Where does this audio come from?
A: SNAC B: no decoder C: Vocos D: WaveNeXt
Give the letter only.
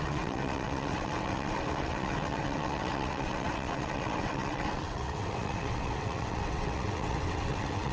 D